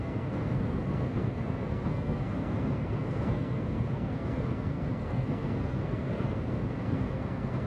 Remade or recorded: remade